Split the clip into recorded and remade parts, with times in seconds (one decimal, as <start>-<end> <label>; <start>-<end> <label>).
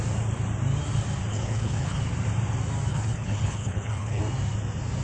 0.0-1.3 recorded; 1.3-2.0 remade; 2.0-2.9 recorded; 2.9-4.2 remade; 4.2-5.0 recorded